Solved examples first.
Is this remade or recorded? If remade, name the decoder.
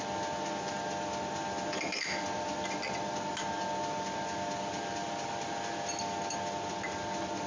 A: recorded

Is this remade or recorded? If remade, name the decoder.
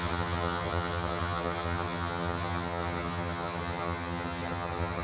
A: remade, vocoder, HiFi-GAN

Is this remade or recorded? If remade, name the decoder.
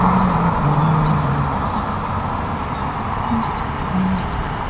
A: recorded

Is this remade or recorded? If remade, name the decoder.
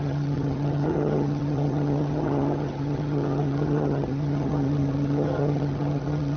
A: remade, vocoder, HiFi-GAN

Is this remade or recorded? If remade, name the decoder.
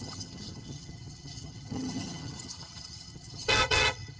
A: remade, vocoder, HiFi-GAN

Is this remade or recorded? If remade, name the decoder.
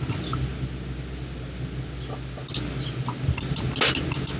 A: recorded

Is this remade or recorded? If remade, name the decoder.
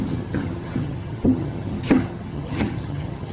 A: remade, vocoder, HiFi-GAN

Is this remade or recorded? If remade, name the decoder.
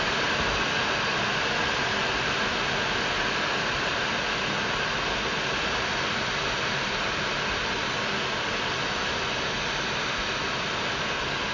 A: recorded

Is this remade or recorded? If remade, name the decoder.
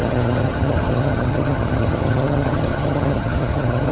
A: remade, vocoder, HiFi-GAN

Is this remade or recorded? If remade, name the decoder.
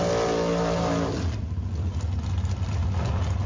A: recorded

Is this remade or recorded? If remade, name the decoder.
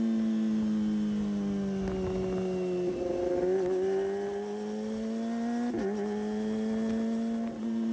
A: recorded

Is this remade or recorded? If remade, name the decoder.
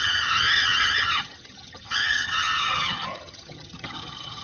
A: remade, vocoder, HiFi-GAN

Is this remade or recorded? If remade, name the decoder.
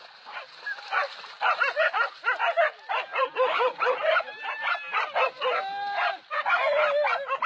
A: recorded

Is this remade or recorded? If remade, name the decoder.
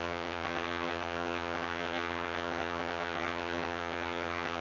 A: remade, vocoder, HiFi-GAN